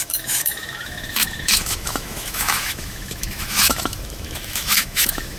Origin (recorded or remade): remade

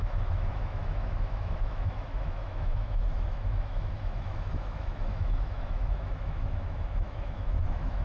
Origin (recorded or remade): remade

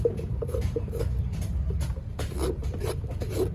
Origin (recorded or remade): remade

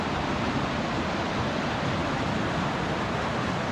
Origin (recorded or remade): recorded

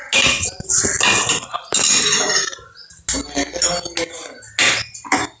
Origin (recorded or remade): recorded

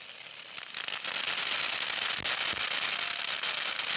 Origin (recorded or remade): recorded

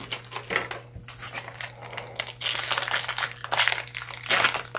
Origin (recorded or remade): recorded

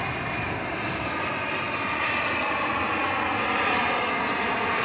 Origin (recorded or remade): recorded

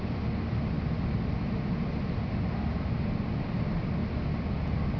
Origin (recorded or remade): recorded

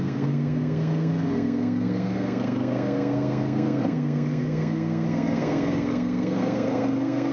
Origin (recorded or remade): remade